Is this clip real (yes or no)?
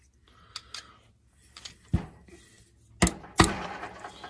yes